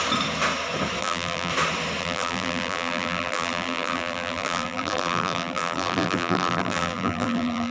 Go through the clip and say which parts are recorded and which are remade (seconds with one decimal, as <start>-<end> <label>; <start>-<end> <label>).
0.0-1.0 recorded; 1.0-1.5 remade; 1.5-2.0 recorded; 2.0-7.7 remade